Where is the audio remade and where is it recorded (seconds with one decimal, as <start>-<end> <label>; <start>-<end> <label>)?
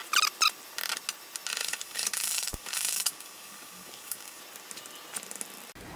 0.0-1.6 recorded; 1.6-4.4 remade; 4.4-6.0 recorded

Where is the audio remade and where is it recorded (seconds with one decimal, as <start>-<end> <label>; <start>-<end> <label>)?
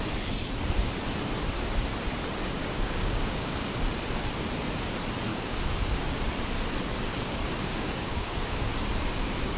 0.0-2.6 recorded; 2.6-3.8 remade; 3.8-5.3 recorded; 5.3-6.2 remade; 6.2-7.1 recorded; 7.1-8.6 remade; 8.6-9.6 recorded